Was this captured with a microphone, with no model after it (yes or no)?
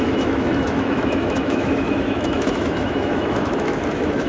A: no